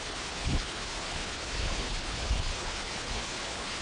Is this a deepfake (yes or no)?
yes